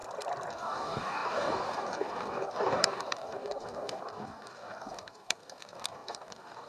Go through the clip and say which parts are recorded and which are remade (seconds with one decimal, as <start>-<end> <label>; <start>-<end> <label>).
0.0-0.5 recorded; 0.5-6.7 remade